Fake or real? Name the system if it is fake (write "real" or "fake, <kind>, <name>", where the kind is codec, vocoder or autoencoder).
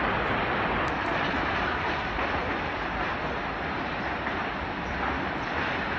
real